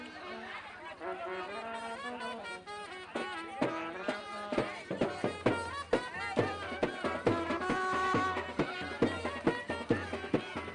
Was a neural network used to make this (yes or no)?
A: no